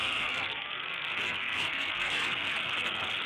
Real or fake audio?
fake